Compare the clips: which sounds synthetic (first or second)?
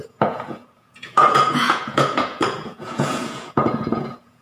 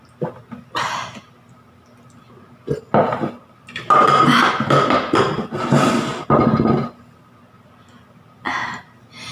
first